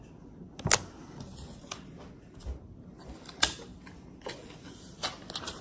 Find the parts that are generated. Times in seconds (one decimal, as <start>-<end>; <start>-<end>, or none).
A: none